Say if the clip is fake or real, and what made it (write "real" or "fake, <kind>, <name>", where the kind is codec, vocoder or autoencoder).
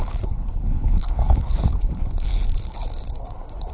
fake, codec, HILCodec